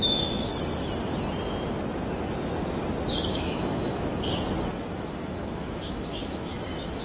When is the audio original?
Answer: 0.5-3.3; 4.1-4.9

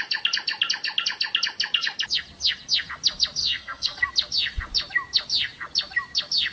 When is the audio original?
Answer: 0.0-3.4; 4.1-6.5

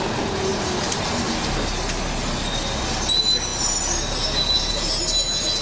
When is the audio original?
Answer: 0.0-5.6

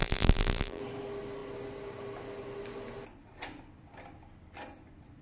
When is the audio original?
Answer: 0.8-5.2

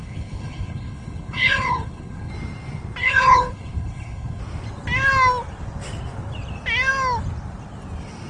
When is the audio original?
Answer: 2.3-3.0; 4.4-8.3

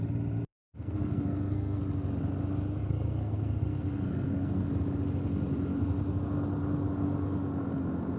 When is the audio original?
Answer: 0.0-0.5; 1.8-2.8; 4.7-8.2

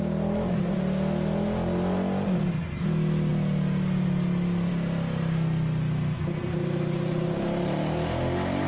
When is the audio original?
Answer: 0.0-8.7

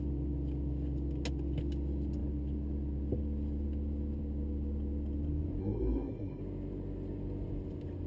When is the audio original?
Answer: 0.0-5.6; 6.4-8.1